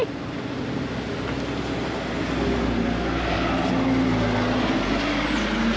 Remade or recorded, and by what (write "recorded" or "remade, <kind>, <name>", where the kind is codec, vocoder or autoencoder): recorded